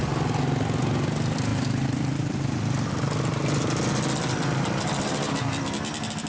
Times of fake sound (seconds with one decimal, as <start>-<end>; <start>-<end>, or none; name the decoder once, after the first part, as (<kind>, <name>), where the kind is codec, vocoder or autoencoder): none